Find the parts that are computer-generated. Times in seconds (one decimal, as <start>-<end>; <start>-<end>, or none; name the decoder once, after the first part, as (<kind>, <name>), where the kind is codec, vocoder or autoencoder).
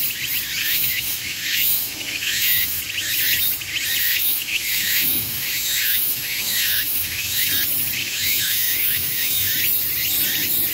0.6-2.8 (autoencoder, DAC-VAE); 4.0-7.5; 8.0-9.5